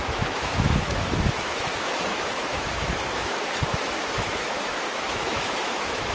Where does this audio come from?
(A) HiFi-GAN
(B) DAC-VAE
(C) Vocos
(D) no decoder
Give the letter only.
B